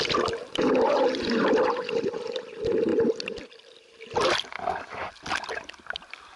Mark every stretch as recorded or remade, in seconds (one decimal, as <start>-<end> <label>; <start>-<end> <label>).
0.0-6.4 recorded